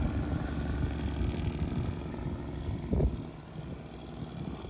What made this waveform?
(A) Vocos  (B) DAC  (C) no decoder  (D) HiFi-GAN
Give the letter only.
C